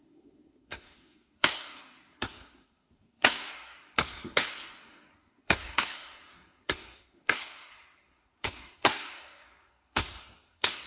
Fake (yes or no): yes